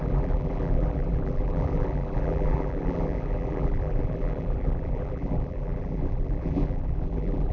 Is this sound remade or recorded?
remade